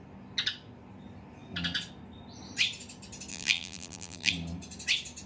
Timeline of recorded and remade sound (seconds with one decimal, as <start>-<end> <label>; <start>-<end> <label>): 0.0-3.3 recorded; 3.3-4.3 remade; 4.3-5.3 recorded